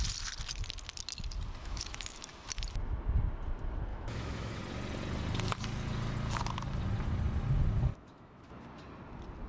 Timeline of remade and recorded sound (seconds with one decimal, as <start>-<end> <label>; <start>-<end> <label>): 0.0-1.6 recorded; 1.6-2.2 remade; 2.2-3.9 recorded; 3.9-4.6 remade; 4.6-7.9 recorded; 7.9-8.5 remade; 8.5-9.5 recorded